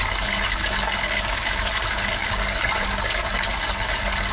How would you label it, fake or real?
fake